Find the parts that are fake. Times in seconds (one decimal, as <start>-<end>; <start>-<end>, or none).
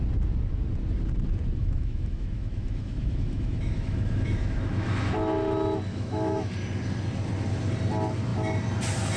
1.6-5.1; 5.9-6.5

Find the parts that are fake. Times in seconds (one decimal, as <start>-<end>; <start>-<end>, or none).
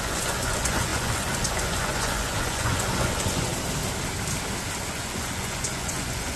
0.0-3.5; 4.9-6.4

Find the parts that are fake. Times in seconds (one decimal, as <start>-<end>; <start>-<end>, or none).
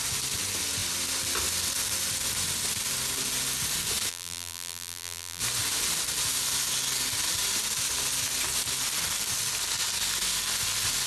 4.1-5.4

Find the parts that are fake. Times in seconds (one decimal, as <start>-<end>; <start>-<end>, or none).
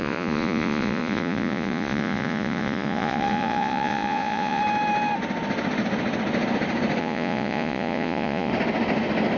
0.0-4.6; 7.0-8.5